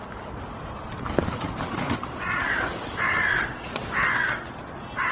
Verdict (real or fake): real